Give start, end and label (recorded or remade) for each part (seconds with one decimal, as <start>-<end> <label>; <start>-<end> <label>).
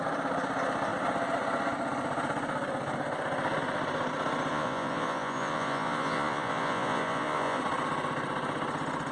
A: 0.0-4.5 recorded; 4.5-7.6 remade; 7.6-9.1 recorded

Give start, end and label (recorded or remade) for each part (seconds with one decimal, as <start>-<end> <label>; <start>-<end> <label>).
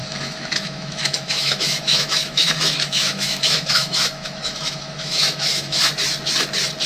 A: 0.0-5.9 remade; 5.9-6.9 recorded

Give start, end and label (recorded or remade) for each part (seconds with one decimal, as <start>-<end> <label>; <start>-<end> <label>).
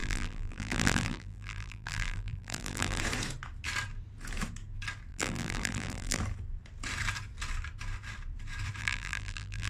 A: 0.0-3.0 remade; 3.0-5.1 recorded; 5.1-6.2 remade; 6.2-8.8 recorded; 8.8-9.7 remade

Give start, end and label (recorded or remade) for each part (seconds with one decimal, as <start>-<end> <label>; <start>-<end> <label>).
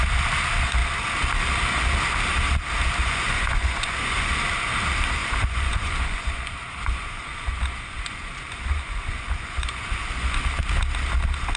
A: 0.0-3.0 recorded; 3.0-4.3 remade; 4.3-5.2 recorded; 5.2-10.4 remade; 10.4-11.6 recorded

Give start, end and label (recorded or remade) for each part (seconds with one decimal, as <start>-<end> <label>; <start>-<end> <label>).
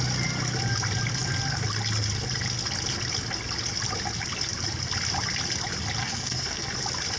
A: 0.0-6.0 recorded; 6.0-6.7 remade; 6.7-7.2 recorded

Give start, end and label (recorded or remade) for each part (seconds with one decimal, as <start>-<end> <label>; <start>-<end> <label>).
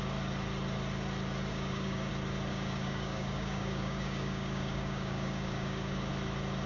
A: 0.0-1.5 recorded; 1.5-2.1 remade; 2.1-2.5 recorded; 2.5-6.1 remade; 6.1-6.7 recorded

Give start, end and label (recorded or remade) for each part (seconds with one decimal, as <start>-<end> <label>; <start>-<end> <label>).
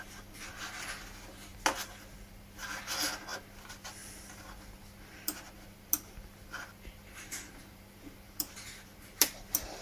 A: 0.0-9.8 recorded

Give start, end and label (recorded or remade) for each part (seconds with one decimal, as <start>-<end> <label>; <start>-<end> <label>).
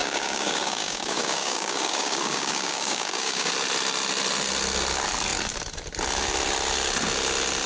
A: 0.0-3.5 remade; 3.5-7.7 recorded